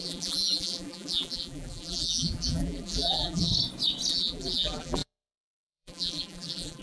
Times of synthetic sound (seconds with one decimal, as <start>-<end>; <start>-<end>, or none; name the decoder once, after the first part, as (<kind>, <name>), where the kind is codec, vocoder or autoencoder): 0.0-3.5 (vocoder, BigVGAN v2); 4.1-6.8